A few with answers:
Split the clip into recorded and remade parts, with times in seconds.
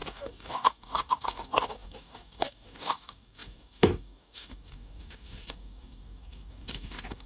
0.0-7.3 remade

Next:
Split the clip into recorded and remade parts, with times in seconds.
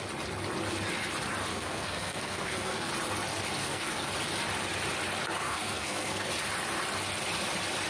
0.0-1.5 recorded; 1.5-2.9 remade; 2.9-3.6 recorded; 3.6-4.1 remade; 4.1-5.4 recorded; 5.4-6.3 remade; 6.3-7.9 recorded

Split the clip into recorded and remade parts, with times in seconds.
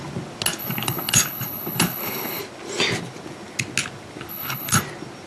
0.0-0.6 recorded; 0.6-2.4 remade; 2.4-4.3 recorded; 4.3-4.8 remade; 4.8-5.3 recorded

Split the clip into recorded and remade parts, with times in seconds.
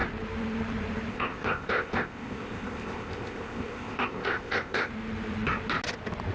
0.0-1.1 recorded; 1.1-4.9 remade; 4.9-6.3 recorded